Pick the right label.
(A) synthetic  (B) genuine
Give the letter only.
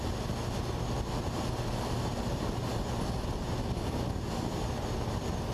B